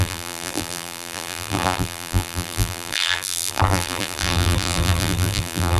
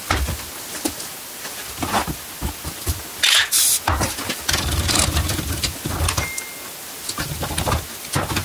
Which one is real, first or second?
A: second